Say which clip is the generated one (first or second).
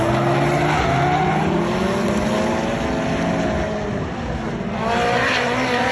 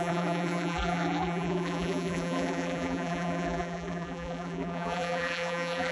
second